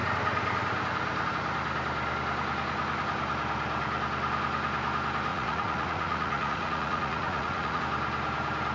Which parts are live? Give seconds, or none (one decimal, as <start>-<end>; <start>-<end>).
0.0-5.3; 7.8-8.7